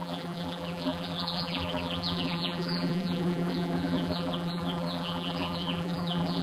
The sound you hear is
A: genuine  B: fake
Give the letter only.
B